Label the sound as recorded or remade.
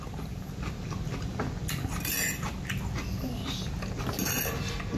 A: recorded